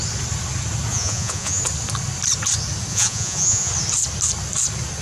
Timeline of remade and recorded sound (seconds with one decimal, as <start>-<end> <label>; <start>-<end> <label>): 0.0-0.9 recorded; 0.9-1.6 remade; 1.6-2.9 recorded; 2.9-3.7 remade; 3.7-5.0 recorded